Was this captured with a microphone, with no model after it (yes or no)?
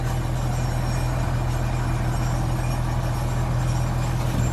yes